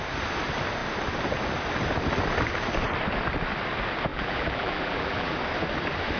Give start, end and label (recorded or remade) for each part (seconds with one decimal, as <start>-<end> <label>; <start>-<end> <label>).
0.0-4.1 recorded; 4.1-5.4 remade; 5.4-6.2 recorded